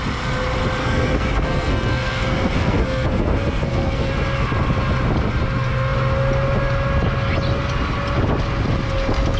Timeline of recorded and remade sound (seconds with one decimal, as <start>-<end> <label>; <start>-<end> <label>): 0.0-0.8 recorded; 0.8-4.1 remade; 4.1-9.4 recorded